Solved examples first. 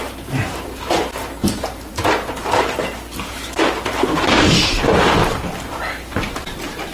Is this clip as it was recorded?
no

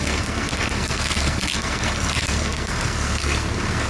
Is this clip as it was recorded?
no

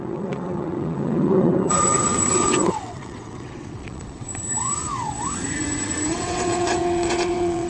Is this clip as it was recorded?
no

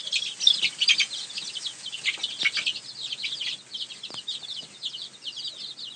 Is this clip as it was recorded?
yes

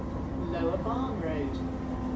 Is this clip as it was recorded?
yes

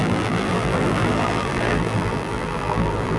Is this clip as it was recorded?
no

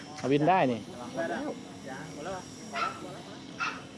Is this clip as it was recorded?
yes